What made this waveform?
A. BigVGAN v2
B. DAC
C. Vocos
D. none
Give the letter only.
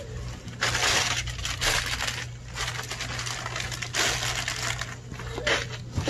D